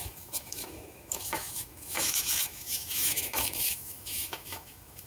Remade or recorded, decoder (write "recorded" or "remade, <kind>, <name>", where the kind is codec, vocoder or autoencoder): remade, autoencoder, DAC-VAE